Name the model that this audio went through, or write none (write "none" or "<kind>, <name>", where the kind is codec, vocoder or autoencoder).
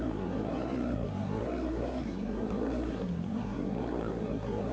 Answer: codec, SNAC